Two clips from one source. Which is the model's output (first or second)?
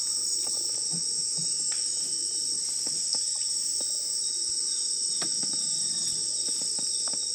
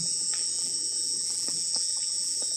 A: second